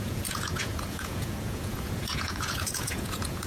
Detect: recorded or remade remade